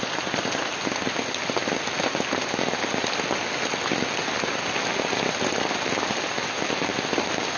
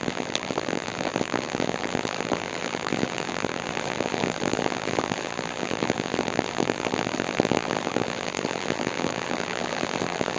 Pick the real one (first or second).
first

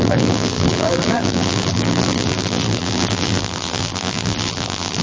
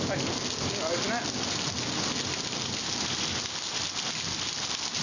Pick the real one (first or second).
second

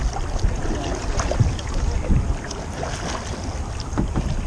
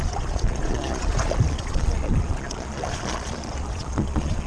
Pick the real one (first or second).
first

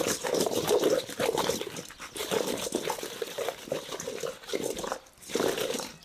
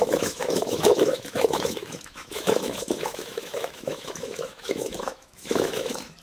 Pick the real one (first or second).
first